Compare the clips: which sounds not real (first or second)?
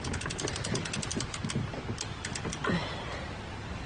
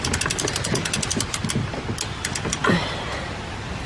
second